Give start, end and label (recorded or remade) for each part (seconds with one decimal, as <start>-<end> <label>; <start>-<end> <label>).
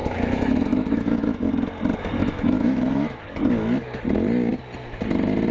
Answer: 0.0-1.5 remade; 1.5-2.2 recorded; 2.2-3.5 remade; 3.5-5.5 recorded